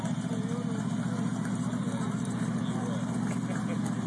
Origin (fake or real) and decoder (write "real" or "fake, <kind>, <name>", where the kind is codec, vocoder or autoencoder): real